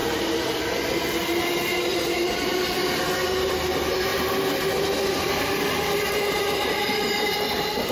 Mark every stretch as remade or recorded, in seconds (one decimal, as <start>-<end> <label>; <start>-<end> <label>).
0.0-0.6 remade; 0.6-1.9 recorded; 1.9-2.8 remade; 2.8-7.9 recorded